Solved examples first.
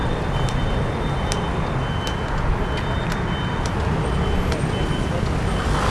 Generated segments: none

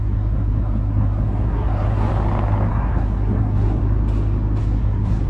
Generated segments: 0.0-2.1; 2.7-3.8; 4.6-5.3

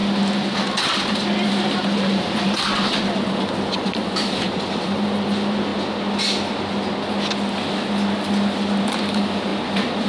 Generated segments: 1.0-5.7; 8.8-10.1

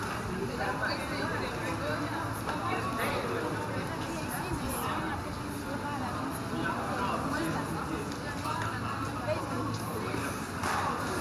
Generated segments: none